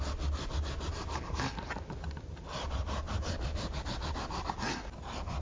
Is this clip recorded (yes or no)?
yes